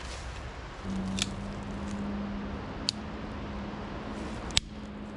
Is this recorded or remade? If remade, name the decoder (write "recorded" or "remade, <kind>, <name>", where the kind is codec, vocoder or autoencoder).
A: recorded